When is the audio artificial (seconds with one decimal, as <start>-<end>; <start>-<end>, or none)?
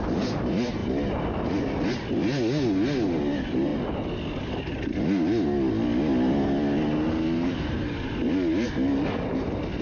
none